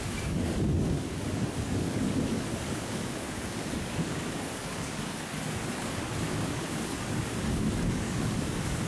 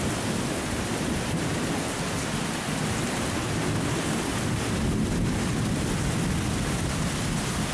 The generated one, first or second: first